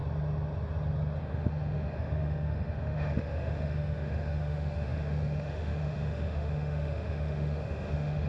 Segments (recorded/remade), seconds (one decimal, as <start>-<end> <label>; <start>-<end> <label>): 0.0-1.2 recorded; 1.2-8.3 remade